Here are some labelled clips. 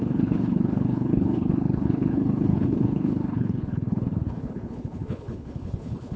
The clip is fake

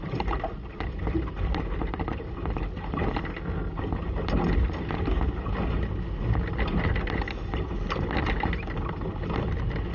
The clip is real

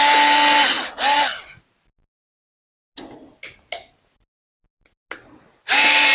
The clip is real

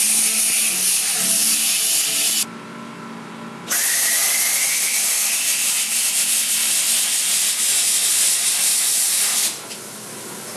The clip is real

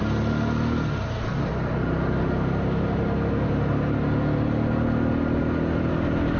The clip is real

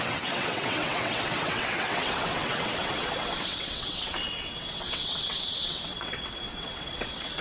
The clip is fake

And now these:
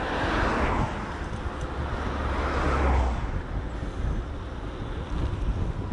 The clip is real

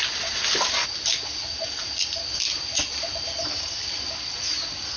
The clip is real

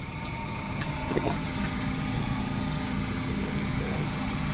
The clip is fake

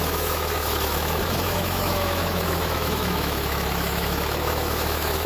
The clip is fake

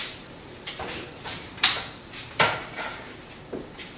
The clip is fake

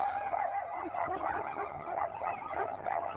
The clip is fake